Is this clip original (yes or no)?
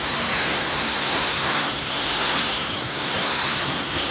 no